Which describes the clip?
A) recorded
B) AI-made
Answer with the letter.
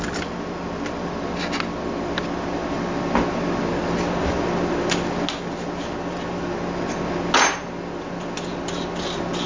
A